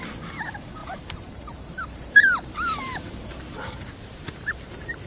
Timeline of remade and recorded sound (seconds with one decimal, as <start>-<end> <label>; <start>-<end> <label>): 0.0-0.8 recorded; 0.8-3.3 remade; 3.3-4.0 recorded; 4.0-5.1 remade